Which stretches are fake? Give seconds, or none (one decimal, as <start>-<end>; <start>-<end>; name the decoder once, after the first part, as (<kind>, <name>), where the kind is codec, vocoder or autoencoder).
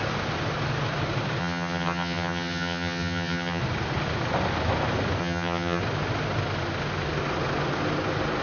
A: 1.4-3.6 (vocoder, HiFi-GAN); 5.2-5.8